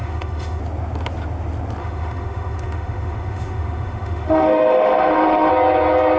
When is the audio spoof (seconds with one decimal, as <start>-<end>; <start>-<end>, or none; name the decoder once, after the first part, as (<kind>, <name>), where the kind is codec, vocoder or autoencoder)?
0.0-0.6 (autoencoder, DAC-VAE); 1.8-5.5